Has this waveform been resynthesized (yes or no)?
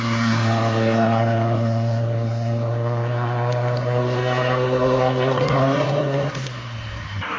yes